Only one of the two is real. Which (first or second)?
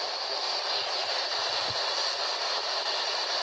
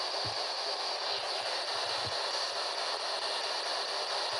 second